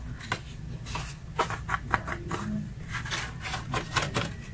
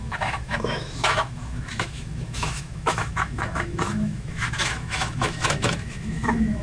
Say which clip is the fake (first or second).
second